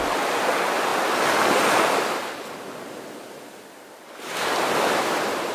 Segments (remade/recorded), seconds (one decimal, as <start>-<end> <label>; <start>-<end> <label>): 0.0-5.5 recorded